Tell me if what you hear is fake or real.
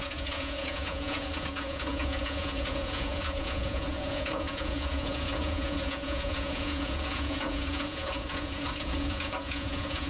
fake